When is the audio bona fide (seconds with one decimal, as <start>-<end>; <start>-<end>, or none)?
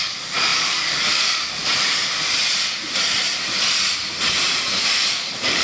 1.6-5.0